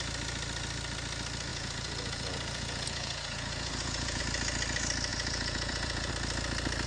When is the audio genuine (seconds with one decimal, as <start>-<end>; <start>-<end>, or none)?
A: 0.0-1.5; 4.2-5.1; 6.1-6.9